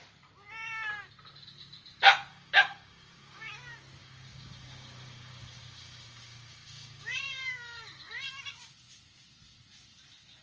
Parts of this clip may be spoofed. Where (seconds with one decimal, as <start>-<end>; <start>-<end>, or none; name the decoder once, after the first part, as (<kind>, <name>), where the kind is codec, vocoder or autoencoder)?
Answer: 2.3-3.5 (codec, DAC); 4.0-8.1